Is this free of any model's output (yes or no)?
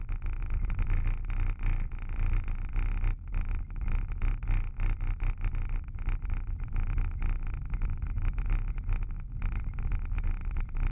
yes